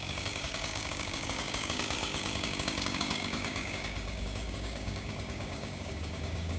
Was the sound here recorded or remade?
remade